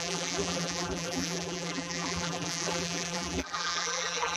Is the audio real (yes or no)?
no